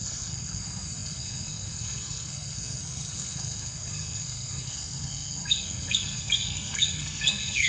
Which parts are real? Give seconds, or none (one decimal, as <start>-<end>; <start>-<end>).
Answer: none